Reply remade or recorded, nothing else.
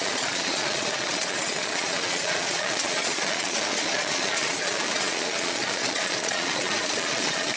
remade